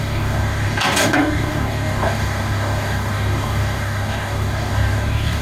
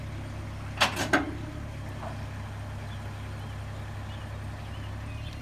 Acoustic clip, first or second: second